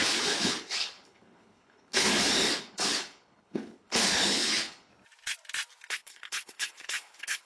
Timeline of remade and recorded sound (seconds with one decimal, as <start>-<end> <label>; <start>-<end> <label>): 0.0-2.1 remade; 2.1-2.6 recorded; 2.6-4.9 remade; 4.9-5.9 recorded; 5.9-7.5 remade